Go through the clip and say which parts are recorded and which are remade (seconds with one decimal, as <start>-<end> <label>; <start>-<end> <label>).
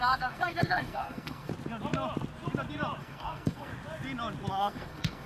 0.0-1.5 remade; 1.5-3.0 recorded; 3.0-3.7 remade; 3.7-4.5 recorded; 4.5-5.3 remade